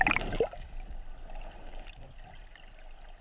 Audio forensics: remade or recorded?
recorded